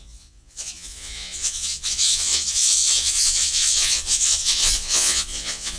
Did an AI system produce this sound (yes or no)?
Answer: yes